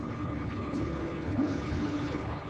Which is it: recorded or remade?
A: remade